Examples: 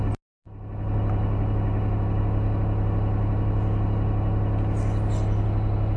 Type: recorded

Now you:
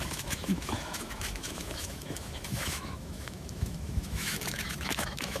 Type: remade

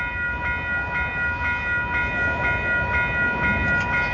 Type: recorded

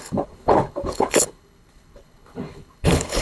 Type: remade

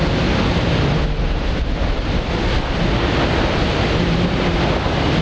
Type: recorded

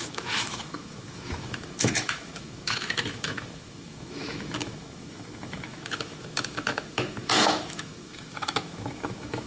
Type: remade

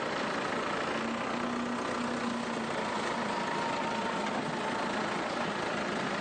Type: recorded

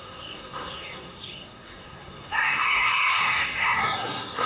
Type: remade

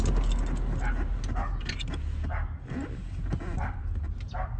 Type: recorded